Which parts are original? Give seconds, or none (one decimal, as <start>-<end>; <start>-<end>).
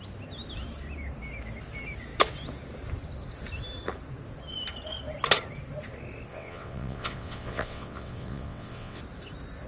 0.0-6.3; 9.0-9.7